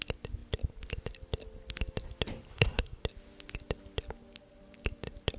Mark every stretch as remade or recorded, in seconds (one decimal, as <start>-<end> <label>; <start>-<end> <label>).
0.0-2.5 recorded; 2.5-3.0 remade; 3.0-5.4 recorded